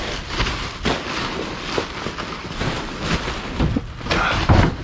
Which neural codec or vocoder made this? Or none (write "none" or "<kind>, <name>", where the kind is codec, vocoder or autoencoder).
none